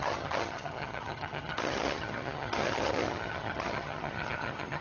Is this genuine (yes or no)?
no